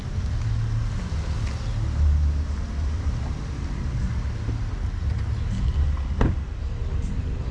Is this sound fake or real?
real